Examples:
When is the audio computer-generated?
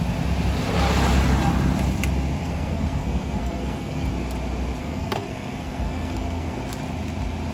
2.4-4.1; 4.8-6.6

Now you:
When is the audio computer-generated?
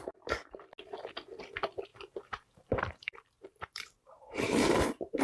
1.9-5.2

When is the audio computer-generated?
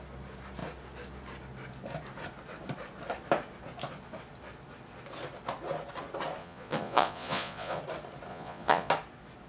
6.4-7.8; 8.3-8.9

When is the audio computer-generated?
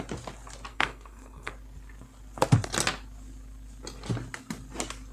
0.7-1.5